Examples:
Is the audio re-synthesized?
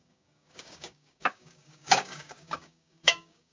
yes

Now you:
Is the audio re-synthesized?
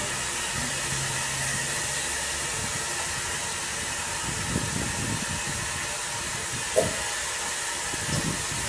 no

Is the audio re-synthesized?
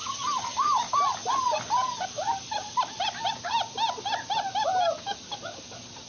no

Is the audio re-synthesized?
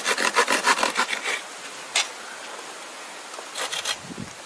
no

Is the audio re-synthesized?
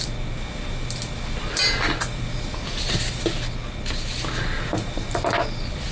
no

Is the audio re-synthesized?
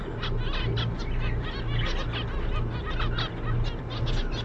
no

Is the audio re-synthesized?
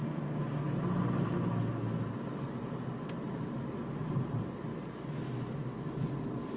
no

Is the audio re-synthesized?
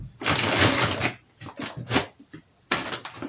no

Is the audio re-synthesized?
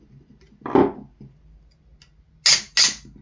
no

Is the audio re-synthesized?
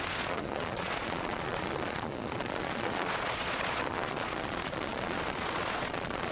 yes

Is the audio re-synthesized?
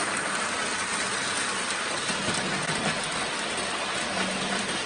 no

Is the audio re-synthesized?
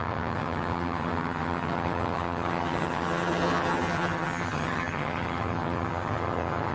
yes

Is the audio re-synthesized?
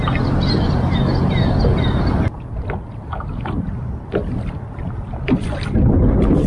no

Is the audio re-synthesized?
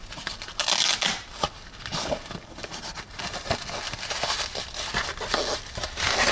no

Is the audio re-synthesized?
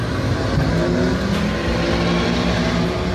no